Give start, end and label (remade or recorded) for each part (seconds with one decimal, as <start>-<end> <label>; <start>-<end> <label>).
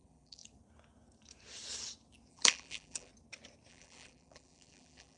0.0-0.4 remade; 0.4-2.3 recorded; 2.3-3.1 remade; 3.1-3.7 recorded; 3.7-5.2 remade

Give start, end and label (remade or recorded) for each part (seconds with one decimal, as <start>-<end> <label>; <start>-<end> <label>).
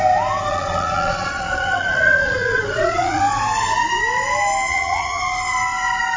0.0-0.5 recorded; 0.5-3.2 remade; 3.2-4.7 recorded; 4.7-5.2 remade; 5.2-6.2 recorded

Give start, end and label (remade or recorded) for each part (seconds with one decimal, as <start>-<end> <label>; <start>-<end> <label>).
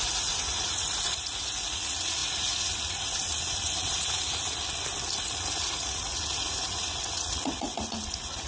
0.0-4.6 remade; 4.6-5.2 recorded; 5.2-8.5 remade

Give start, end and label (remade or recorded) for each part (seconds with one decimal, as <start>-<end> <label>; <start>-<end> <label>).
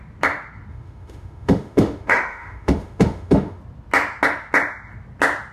0.0-0.7 recorded; 0.7-3.6 remade; 3.6-5.5 recorded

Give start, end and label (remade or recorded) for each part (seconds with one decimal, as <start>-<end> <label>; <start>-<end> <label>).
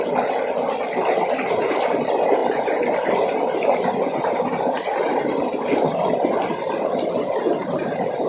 0.0-8.3 recorded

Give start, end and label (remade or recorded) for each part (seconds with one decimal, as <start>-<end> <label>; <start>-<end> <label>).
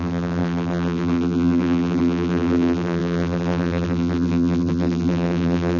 0.0-5.8 remade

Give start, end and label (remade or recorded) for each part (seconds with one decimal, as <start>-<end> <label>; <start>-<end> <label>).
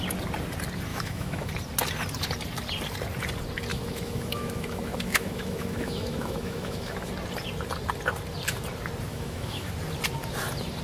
0.0-0.9 recorded; 0.9-1.5 remade; 1.5-3.7 recorded; 3.7-7.1 remade; 7.1-9.1 recorded; 9.1-9.7 remade; 9.7-10.8 recorded